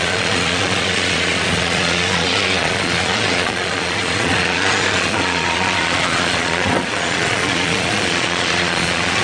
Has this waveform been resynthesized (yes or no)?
yes